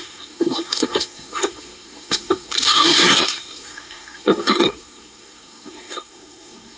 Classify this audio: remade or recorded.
remade